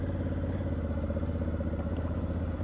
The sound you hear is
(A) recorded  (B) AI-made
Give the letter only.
A